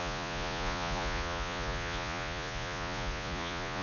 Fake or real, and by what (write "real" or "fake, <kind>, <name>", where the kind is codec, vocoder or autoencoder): fake, vocoder, Vocos